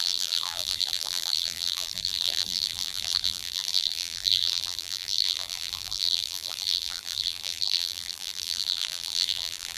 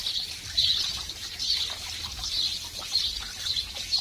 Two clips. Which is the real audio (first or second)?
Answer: second